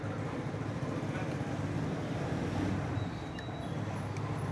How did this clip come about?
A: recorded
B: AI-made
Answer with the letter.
B